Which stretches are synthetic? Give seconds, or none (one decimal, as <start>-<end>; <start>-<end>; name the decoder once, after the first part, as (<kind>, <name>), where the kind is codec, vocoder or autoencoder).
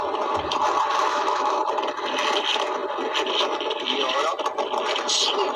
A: 1.1-1.6 (autoencoder, DAC-VAE)